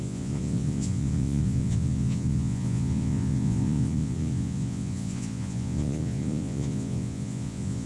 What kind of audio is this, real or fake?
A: fake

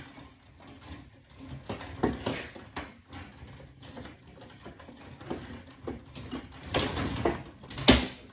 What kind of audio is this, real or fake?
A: real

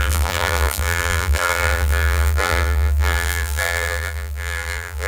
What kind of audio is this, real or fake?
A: fake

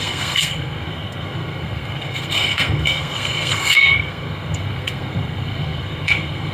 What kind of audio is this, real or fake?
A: fake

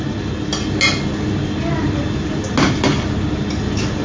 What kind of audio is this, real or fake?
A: real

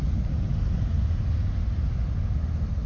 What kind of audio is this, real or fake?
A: real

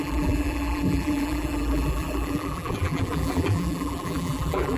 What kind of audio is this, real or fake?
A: fake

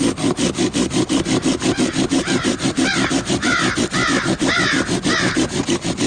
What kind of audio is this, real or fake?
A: real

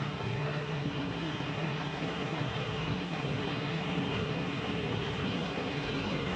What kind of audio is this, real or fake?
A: fake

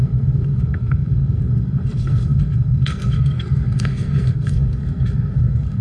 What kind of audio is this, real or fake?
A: fake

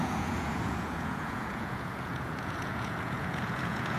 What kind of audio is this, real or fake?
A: fake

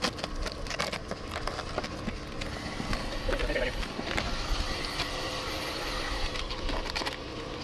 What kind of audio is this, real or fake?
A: real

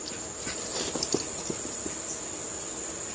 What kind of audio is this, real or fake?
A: real